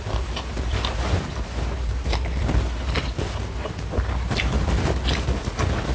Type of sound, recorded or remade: recorded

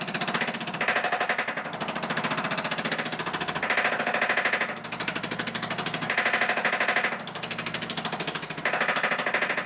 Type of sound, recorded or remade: recorded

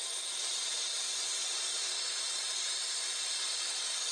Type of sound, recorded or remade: recorded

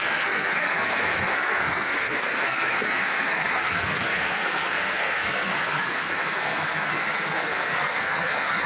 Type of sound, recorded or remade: remade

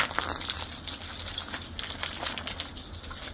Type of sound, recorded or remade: recorded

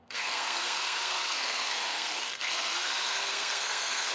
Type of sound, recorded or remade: remade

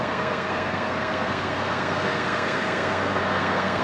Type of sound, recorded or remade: remade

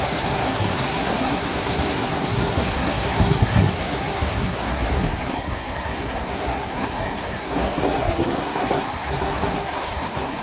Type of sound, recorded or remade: remade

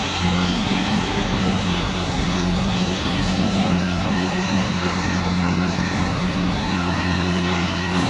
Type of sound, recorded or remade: remade